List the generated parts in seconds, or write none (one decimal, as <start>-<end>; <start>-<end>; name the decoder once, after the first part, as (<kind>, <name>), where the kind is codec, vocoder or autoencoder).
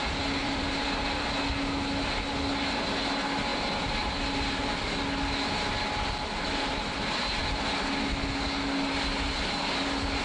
0.4-1.3 (vocoder, BigVGAN v2)